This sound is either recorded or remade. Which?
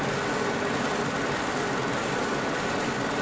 recorded